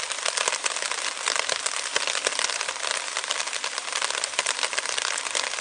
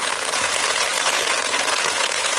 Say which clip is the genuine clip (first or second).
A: first